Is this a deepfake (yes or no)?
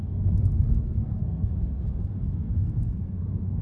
yes